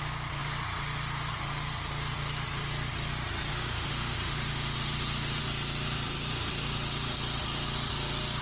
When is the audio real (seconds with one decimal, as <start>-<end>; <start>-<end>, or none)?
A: 0.0-3.5; 5.4-8.4